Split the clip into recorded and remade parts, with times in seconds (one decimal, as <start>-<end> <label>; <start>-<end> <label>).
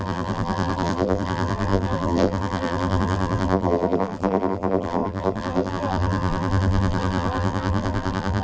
0.0-8.4 remade